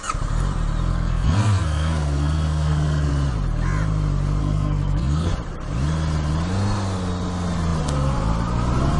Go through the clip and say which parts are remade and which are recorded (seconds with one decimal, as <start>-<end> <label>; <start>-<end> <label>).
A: 0.0-0.9 recorded; 0.9-3.1 remade; 3.1-4.4 recorded; 4.4-5.3 remade; 5.3-9.0 recorded